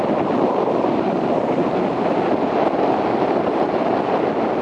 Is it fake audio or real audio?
real